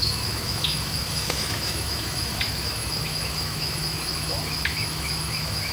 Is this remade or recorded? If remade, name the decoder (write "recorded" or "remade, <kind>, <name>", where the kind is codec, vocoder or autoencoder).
remade, autoencoder, DAC-VAE